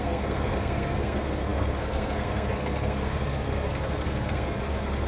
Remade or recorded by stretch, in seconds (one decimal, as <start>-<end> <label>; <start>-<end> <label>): 0.0-5.1 remade